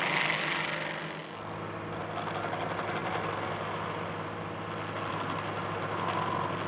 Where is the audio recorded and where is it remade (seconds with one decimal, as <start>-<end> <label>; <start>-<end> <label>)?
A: 0.0-6.7 recorded